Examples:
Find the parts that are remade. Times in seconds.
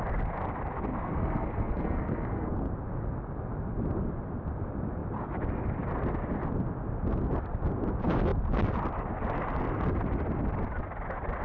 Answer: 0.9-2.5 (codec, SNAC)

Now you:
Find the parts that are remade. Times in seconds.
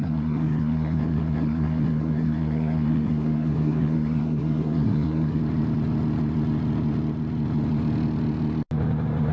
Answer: 0.0-5.4 (codec, SNAC)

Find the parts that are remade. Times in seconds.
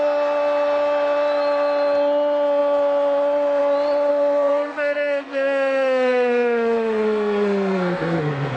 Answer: 4.1-8.6 (codec, SNAC)